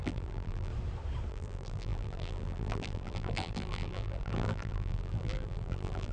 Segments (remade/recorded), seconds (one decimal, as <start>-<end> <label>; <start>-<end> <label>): 0.0-0.7 remade; 0.7-1.3 recorded; 1.3-6.1 remade